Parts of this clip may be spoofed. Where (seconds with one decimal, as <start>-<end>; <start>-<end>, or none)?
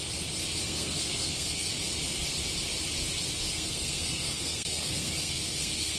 0.6-1.7; 3.5-6.0